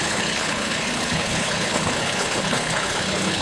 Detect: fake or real fake